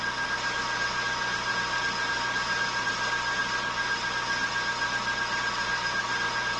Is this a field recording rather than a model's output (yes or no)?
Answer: yes